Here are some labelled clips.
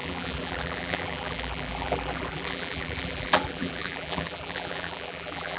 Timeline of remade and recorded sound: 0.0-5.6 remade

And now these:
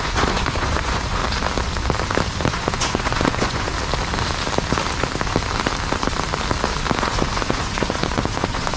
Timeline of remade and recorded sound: 0.0-1.2 remade; 1.2-2.5 recorded; 2.5-3.7 remade; 3.7-7.0 recorded; 7.0-8.8 remade

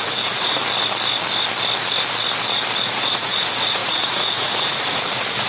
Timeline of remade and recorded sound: 0.0-0.6 remade; 0.6-2.8 recorded; 2.8-5.5 remade

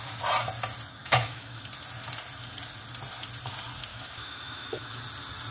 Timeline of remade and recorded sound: 0.0-1.0 recorded; 1.0-1.6 remade; 1.6-3.9 recorded; 3.9-5.0 remade; 5.0-5.5 recorded

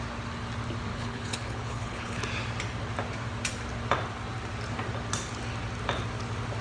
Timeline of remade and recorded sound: 0.0-0.9 recorded; 0.9-2.2 remade; 2.2-6.6 recorded

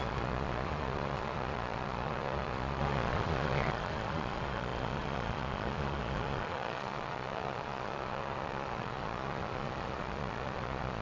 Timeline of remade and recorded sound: 0.0-11.0 remade

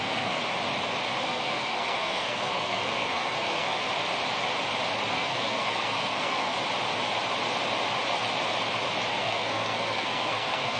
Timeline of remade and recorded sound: 0.0-0.4 remade; 0.4-1.2 recorded; 1.2-3.8 remade; 3.8-5.1 recorded; 5.1-6.5 remade; 6.5-9.1 recorded; 9.1-10.8 remade

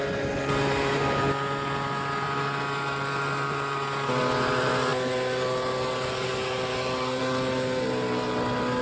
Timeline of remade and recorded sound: 0.0-8.8 recorded